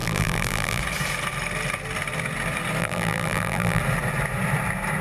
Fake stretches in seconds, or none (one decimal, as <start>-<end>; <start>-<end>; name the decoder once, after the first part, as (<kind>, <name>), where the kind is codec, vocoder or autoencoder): 0.0-0.8 (vocoder, BigVGAN v2); 2.8-3.8